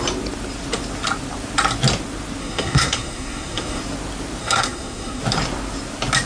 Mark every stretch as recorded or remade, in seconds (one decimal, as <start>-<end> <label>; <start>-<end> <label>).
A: 0.0-2.4 recorded; 2.4-3.8 remade; 3.8-4.4 recorded; 4.4-5.2 remade; 5.2-6.3 recorded